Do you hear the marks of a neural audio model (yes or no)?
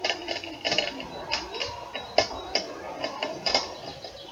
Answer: no